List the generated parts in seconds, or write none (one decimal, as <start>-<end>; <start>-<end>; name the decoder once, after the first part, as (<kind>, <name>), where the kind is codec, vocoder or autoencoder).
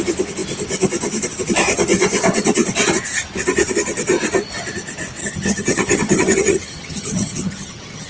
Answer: 5.2-8.1 (vocoder, HiFi-GAN)